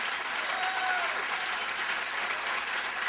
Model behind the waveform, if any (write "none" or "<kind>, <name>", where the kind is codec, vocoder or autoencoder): vocoder, BigVGAN v2